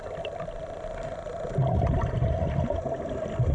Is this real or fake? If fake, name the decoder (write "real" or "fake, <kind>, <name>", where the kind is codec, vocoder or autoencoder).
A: real